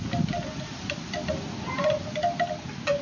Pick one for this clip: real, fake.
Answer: real